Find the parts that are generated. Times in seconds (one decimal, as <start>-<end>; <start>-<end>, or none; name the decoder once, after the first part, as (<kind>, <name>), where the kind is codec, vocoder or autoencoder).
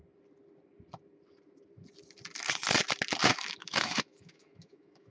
3.2-5.1 (autoencoder, DAC-VAE)